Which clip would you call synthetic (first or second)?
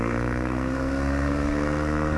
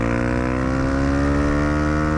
first